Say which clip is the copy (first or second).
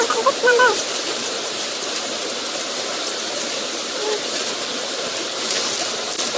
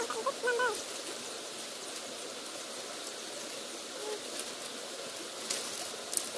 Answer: first